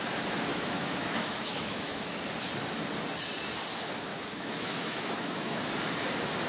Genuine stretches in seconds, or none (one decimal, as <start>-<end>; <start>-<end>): 0.0-0.5; 2.2-4.1; 5.6-6.5